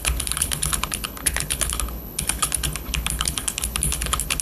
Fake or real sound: fake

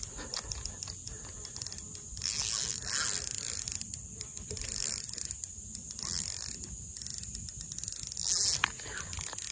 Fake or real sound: real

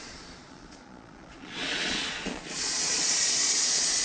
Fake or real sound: fake